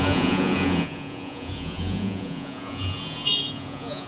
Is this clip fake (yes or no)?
yes